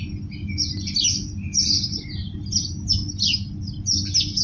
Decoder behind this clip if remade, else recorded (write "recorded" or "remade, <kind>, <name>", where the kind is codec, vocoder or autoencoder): recorded